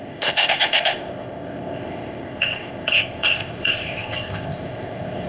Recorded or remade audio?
remade